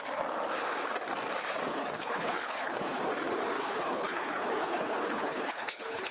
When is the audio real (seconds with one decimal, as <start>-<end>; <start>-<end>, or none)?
0.0-1.7; 3.0-3.6